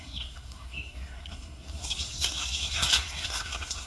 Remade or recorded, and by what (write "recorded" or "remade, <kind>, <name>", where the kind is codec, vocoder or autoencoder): remade, codec, SNAC